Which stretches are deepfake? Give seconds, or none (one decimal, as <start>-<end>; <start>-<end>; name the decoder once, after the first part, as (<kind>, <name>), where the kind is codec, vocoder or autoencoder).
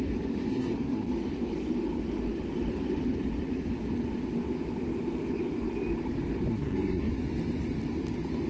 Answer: 0.5-1.1 (codec, SNAC); 6.5-7.1